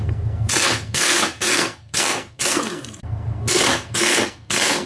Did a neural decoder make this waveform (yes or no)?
yes